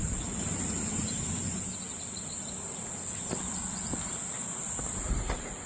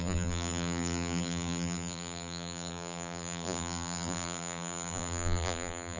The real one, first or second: first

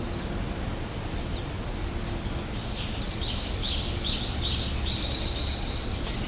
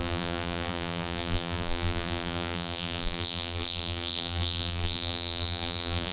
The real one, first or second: first